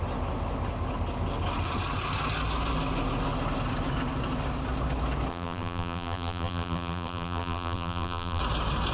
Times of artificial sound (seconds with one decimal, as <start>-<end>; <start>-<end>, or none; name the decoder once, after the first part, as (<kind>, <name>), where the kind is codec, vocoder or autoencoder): 5.3-8.4 (vocoder, BigVGAN v2)